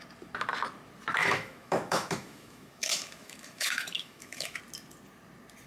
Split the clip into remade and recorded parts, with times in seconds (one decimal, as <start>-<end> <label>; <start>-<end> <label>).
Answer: 0.0-1.2 recorded; 1.2-4.6 remade; 4.6-5.7 recorded